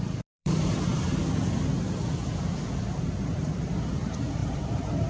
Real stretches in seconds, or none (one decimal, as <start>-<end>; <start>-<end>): 1.2-3.2